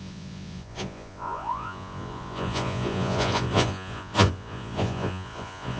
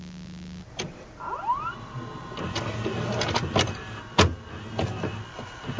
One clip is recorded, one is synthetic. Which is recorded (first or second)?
second